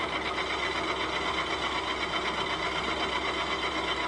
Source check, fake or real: real